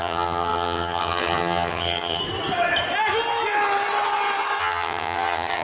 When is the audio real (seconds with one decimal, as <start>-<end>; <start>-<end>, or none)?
2.2-4.6